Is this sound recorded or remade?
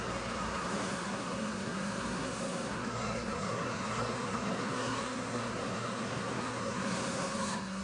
remade